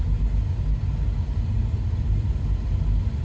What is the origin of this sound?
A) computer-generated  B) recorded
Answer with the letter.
B